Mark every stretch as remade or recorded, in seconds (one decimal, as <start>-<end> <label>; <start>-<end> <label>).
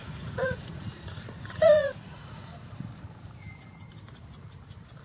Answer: 0.0-2.5 remade; 2.5-5.0 recorded